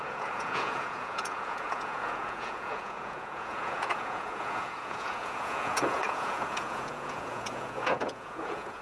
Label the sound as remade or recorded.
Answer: remade